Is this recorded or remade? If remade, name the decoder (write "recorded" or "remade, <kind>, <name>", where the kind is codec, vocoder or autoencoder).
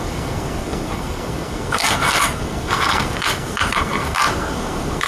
remade, codec, SNAC